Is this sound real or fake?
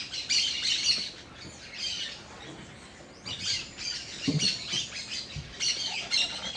real